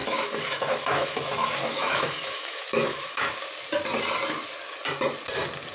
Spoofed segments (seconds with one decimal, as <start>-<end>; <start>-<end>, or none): 0.0-3.3